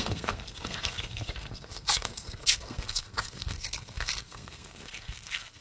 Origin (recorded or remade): remade